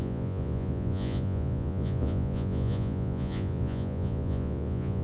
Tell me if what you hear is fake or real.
fake